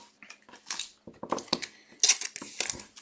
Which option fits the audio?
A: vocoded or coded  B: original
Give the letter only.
B